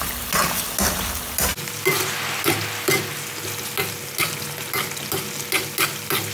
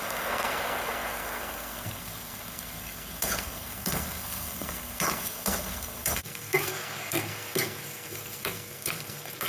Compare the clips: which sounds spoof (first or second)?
second